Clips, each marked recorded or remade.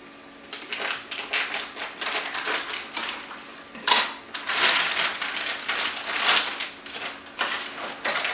recorded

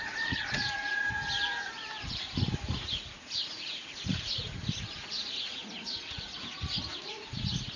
remade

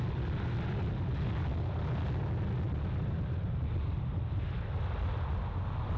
recorded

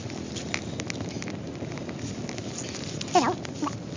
recorded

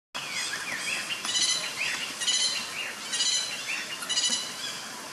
recorded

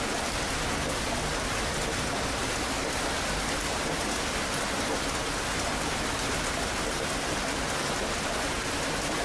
recorded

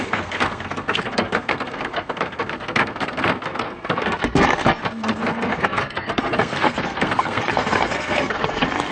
remade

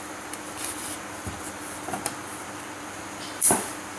remade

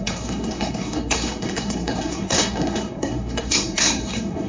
remade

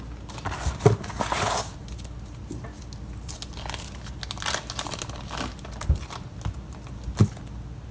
recorded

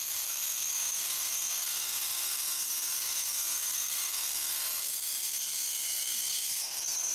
remade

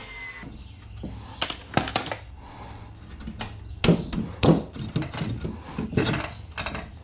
recorded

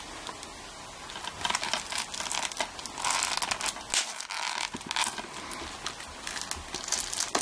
recorded